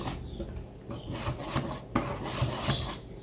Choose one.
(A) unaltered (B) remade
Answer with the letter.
A